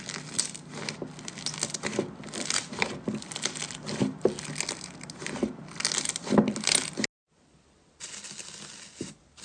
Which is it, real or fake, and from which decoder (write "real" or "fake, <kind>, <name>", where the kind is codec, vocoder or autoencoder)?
real